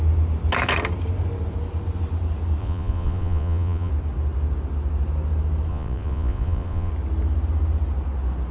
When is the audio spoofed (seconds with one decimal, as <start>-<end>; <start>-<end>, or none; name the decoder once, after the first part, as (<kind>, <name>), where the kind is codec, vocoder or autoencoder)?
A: 2.6-3.9 (vocoder, Vocos); 5.7-6.9

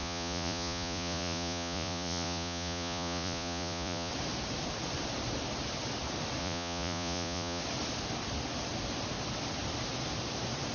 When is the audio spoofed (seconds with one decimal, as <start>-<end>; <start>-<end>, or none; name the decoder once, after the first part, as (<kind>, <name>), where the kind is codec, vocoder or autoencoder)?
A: 0.0-4.1 (vocoder, Vocos); 6.4-7.6

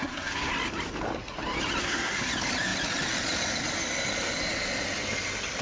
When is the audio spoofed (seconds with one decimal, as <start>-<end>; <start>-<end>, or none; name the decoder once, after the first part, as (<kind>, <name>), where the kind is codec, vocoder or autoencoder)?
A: 0.0-0.5 (codec, SNAC); 1.8-2.3

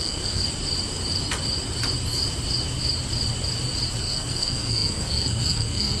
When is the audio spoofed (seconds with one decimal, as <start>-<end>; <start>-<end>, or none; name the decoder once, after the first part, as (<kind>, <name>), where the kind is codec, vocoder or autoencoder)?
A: 0.0-0.4 (codec, SNAC); 4.0-6.0

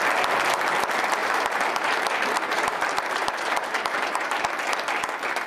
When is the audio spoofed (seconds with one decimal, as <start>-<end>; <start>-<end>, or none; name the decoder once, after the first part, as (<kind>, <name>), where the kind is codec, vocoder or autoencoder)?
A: 1.2-4.5 (vocoder, BigVGAN v2)